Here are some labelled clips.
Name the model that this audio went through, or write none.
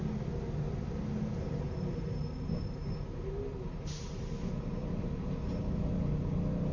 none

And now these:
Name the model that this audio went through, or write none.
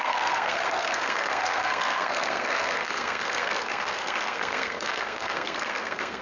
codec, SNAC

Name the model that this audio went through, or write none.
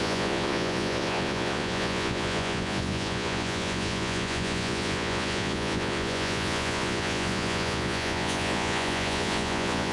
vocoder, Vocos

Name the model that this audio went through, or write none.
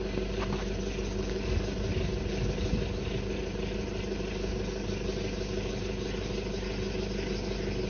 none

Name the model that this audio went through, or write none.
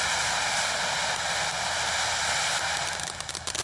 none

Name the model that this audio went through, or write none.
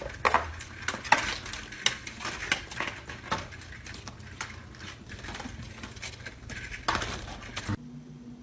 none